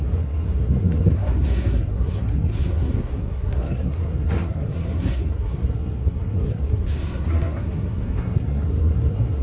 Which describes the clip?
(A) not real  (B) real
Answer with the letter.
A